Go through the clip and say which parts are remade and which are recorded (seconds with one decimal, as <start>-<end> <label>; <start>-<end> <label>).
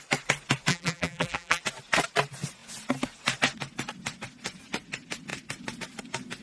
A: 0.0-0.7 recorded; 0.7-1.6 remade; 1.6-6.4 recorded